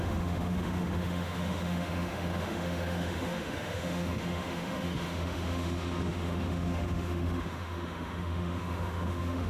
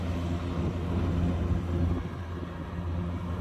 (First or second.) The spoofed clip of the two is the first